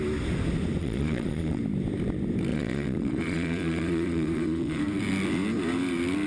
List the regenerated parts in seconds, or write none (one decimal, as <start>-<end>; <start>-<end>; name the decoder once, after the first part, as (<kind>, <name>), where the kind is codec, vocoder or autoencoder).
0.8-1.6 (vocoder, Vocos); 2.5-4.8